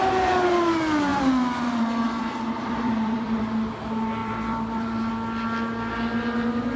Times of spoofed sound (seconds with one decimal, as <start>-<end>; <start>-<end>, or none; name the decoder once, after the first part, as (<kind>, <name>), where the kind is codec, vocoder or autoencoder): 1.1-3.4 (vocoder, BigVGAN v2); 4.2-5.1